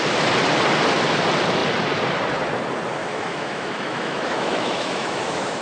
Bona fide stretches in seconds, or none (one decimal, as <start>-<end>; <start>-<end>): 0.0-3.0